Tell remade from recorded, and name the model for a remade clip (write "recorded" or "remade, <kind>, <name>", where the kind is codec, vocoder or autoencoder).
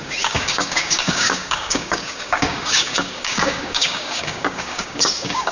remade, codec, DAC